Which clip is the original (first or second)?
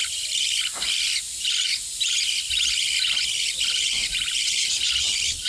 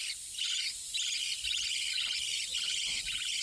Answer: second